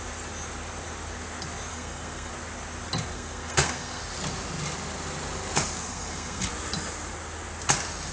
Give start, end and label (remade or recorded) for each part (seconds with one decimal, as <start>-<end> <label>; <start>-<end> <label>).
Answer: 0.0-1.7 recorded; 1.7-2.3 remade; 2.3-3.1 recorded; 3.1-4.0 remade; 4.0-5.8 recorded; 5.8-6.5 remade; 6.5-8.1 recorded